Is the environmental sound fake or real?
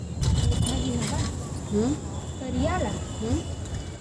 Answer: real